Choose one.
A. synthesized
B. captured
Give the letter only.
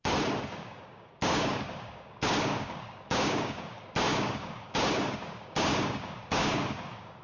A